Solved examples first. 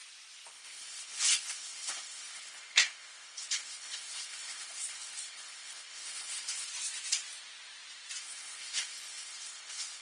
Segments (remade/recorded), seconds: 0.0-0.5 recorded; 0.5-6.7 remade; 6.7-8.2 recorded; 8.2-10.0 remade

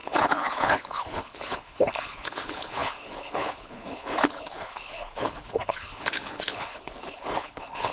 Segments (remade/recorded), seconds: 0.0-7.9 remade